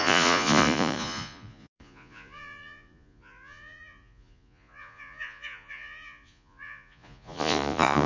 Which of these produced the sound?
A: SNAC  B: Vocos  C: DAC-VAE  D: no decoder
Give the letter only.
B